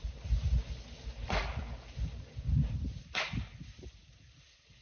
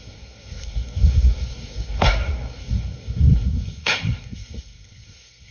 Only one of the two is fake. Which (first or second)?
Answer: second